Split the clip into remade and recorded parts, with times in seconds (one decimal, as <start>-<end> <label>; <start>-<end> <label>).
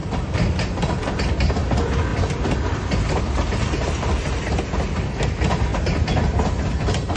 0.0-7.2 recorded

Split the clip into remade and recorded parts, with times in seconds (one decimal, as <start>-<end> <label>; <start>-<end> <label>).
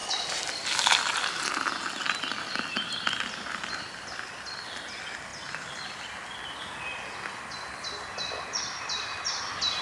0.0-2.7 recorded; 2.7-4.3 remade; 4.3-9.8 recorded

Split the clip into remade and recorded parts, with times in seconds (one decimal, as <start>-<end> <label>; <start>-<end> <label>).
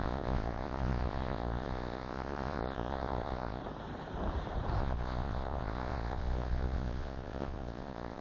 0.0-3.6 remade; 3.6-4.8 recorded; 4.8-8.2 remade